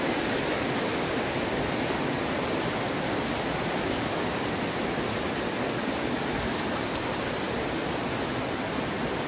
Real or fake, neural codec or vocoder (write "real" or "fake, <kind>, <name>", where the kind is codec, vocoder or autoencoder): real